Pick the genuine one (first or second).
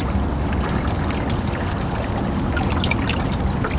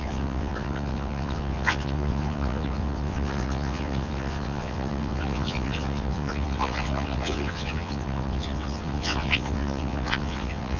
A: first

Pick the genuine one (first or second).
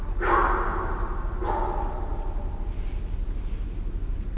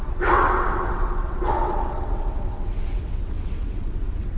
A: first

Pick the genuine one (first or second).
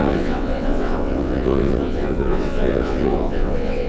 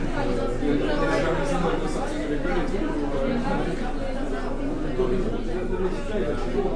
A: second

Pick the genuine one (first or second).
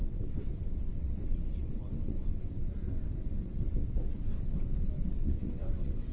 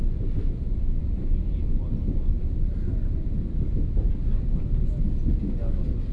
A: second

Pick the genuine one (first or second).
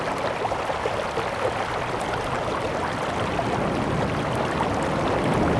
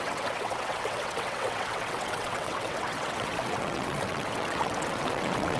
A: first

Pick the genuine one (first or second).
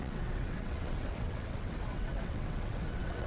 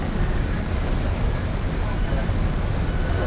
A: second